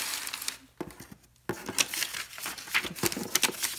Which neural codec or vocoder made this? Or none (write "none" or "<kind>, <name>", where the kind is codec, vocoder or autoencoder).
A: none